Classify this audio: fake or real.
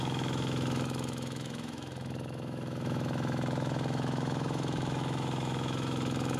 fake